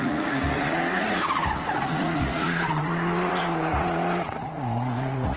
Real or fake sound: fake